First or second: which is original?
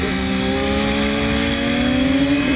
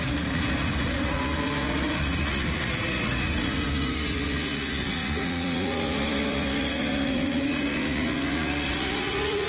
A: first